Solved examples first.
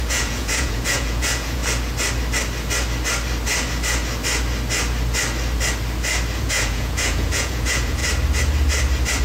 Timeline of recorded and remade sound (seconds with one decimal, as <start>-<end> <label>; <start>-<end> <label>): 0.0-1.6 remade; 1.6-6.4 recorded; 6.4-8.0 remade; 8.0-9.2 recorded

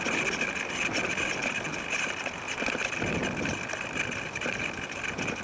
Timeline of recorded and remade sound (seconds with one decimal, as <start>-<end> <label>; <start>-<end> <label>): 0.0-5.4 recorded

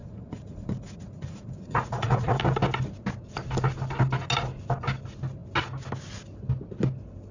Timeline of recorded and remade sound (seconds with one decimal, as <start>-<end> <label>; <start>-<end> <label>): 0.0-2.4 remade; 2.4-7.3 recorded

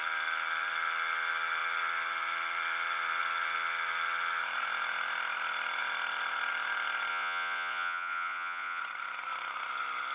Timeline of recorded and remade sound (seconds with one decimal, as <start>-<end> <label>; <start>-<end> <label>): 0.0-7.1 recorded; 7.1-8.8 remade; 8.8-10.1 recorded

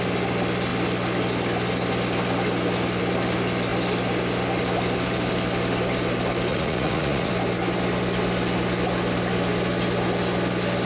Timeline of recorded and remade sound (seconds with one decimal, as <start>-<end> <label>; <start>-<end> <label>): 0.0-6.5 recorded; 6.5-7.3 remade; 7.3-10.9 recorded

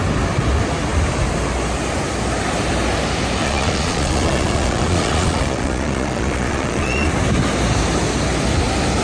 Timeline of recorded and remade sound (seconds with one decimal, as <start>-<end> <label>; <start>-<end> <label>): 0.0-3.4 recorded; 3.4-7.1 remade; 7.1-9.0 recorded

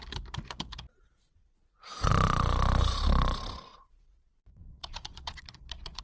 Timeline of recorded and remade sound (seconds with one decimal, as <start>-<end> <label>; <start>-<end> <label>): 0.0-1.4 recorded; 1.4-2.1 remade; 2.1-3.7 recorded; 3.7-6.0 remade